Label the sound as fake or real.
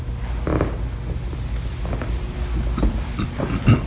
real